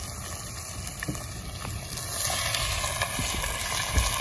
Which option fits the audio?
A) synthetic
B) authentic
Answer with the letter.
B